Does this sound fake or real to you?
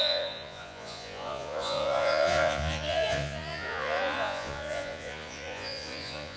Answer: fake